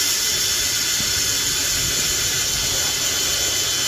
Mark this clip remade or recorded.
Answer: recorded